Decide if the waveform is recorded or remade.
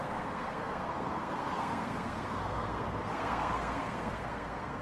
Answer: remade